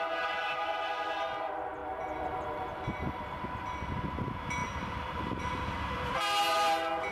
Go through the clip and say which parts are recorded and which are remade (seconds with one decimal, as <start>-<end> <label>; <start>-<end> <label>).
0.0-4.6 recorded; 4.6-6.1 remade; 6.1-7.1 recorded